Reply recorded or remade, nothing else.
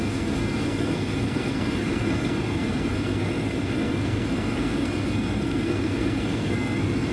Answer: remade